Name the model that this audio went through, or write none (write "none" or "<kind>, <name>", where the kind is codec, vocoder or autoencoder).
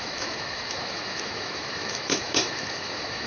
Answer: autoencoder, DAC-VAE